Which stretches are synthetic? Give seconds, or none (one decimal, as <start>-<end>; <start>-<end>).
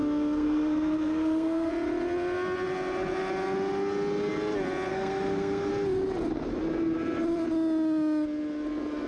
0.0-1.7; 4.9-5.7